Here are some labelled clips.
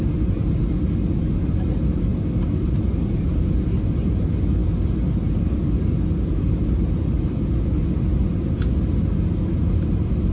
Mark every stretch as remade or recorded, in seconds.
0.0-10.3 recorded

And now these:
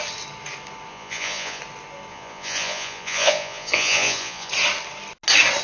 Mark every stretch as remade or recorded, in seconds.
0.0-0.9 recorded; 0.9-1.6 remade; 1.6-2.1 recorded; 2.1-4.5 remade; 4.5-5.6 recorded